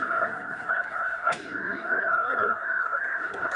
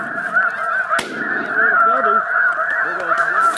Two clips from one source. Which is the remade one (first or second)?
first